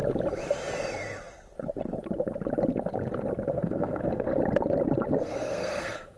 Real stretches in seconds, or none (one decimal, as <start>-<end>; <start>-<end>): 0.0-3.5; 4.3-5.2